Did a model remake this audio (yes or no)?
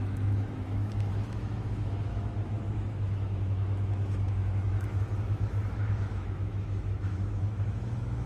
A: yes